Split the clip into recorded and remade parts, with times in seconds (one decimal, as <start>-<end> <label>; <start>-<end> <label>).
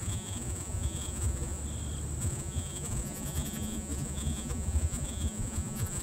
0.0-1.6 remade; 1.6-2.2 recorded; 2.2-6.0 remade